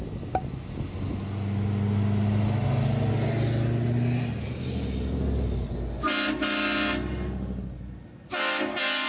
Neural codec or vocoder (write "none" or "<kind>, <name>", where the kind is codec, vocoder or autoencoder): none